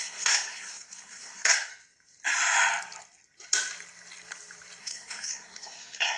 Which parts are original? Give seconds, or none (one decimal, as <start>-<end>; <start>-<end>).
1.7-4.8